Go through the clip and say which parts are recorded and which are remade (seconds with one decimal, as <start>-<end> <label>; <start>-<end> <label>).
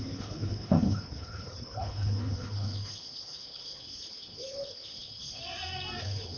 0.0-5.4 remade; 5.4-6.0 recorded; 6.0-6.4 remade